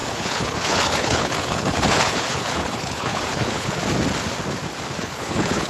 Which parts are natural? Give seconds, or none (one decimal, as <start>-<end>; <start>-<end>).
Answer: 3.8-5.0